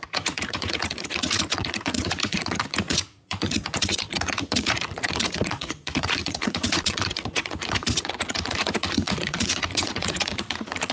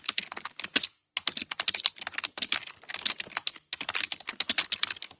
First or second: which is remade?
first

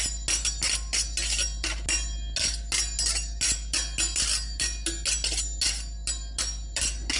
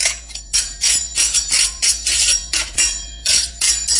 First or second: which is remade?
second